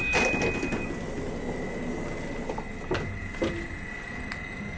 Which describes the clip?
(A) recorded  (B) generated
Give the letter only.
A